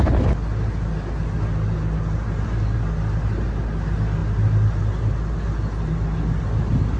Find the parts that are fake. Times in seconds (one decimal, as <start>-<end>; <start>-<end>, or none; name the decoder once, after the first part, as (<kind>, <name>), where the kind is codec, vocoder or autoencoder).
none